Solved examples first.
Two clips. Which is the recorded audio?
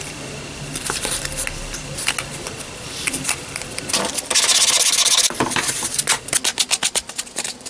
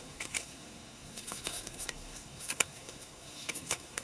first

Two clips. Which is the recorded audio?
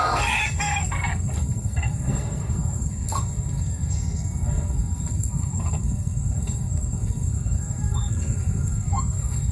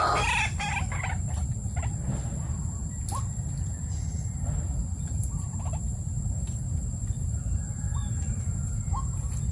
second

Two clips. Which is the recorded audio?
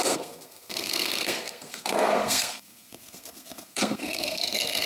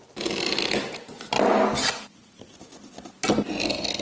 second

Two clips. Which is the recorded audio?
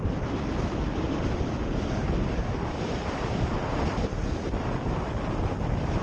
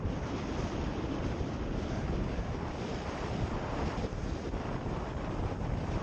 first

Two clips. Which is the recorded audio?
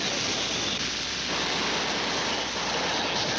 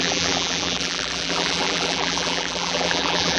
first